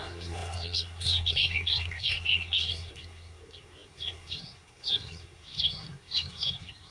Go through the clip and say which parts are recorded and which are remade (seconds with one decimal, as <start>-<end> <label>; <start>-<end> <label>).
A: 0.0-6.9 remade